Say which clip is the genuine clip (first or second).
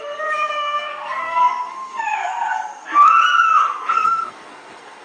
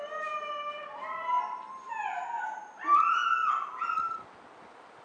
second